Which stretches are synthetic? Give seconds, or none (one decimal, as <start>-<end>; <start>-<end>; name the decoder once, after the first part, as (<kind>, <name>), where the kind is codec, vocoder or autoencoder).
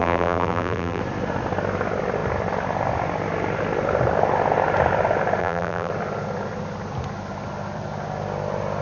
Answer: 0.0-1.0 (vocoder, BigVGAN v2); 5.4-5.9